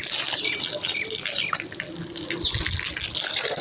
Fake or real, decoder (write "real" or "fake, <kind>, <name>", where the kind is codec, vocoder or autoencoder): real